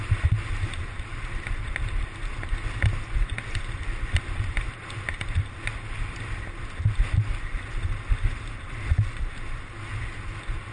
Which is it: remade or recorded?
recorded